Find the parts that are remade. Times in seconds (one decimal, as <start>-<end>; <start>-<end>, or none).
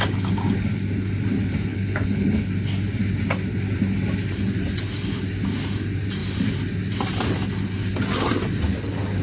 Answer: 1.7-2.5